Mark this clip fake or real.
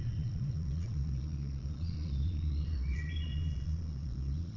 fake